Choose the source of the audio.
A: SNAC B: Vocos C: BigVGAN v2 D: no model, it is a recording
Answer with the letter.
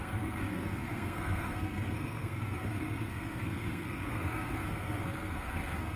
A